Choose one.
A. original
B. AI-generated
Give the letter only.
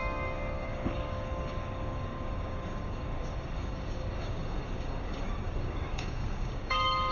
B